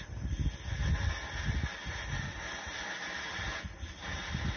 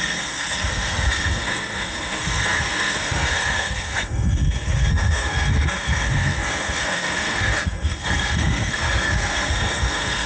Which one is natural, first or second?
first